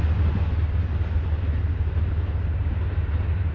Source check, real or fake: real